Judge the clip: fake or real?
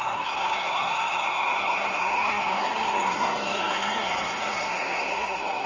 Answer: fake